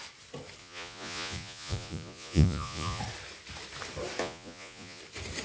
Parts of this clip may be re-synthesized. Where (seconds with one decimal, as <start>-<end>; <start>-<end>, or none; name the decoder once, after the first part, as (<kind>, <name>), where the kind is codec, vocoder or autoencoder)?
0.6-3.0 (vocoder, Vocos); 4.2-5.0